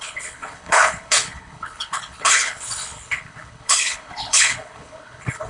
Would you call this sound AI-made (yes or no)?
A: yes